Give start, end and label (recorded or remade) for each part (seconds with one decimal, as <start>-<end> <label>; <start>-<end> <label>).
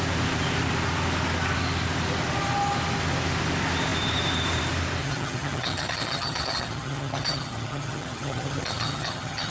0.0-5.0 recorded; 5.0-9.5 remade